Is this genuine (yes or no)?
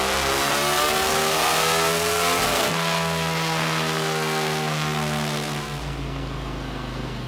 no